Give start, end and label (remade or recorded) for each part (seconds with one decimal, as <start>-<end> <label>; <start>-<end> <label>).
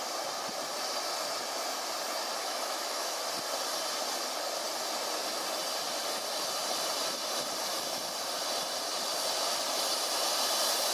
0.0-2.4 recorded; 2.4-3.2 remade; 3.2-10.9 recorded